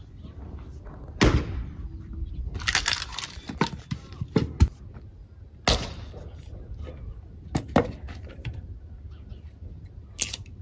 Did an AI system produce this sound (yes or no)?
no